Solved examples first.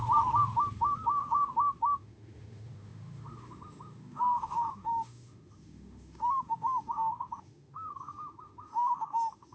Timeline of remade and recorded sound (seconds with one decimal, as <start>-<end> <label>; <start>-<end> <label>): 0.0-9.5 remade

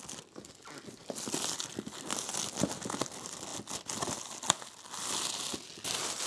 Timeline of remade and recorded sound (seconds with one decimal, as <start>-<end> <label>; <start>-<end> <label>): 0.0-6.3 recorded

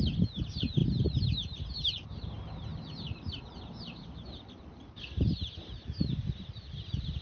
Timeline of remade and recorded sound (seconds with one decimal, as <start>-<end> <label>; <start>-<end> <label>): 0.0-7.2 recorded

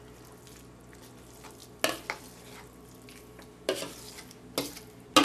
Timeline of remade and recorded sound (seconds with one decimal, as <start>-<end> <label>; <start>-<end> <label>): 0.0-5.2 recorded